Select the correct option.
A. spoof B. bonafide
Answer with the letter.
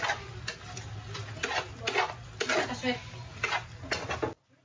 B